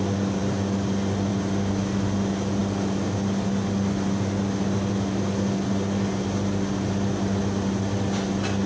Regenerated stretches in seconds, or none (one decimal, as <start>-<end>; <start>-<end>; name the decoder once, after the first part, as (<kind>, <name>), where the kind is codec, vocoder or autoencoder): none